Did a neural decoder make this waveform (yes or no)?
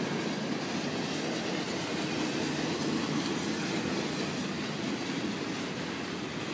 no